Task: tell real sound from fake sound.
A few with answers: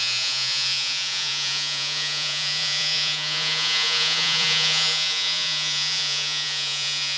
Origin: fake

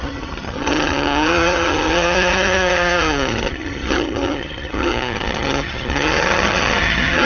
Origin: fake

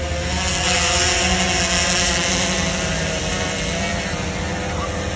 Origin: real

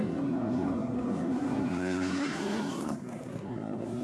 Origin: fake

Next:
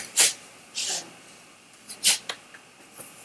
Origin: real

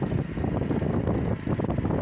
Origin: real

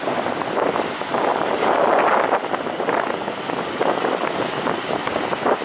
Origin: real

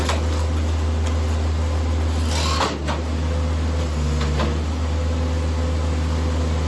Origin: real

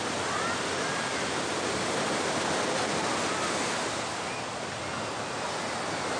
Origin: real